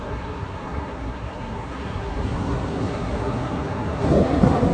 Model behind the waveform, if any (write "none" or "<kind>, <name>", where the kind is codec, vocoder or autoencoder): codec, SNAC